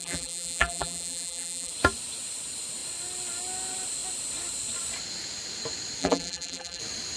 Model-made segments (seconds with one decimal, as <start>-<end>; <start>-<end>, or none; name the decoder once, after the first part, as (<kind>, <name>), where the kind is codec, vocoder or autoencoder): 0.0-1.7 (vocoder, BigVGAN v2); 6.0-6.8